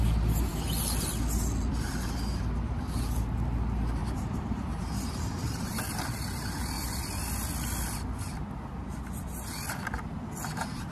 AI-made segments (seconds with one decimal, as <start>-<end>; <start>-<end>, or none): 4.0-5.8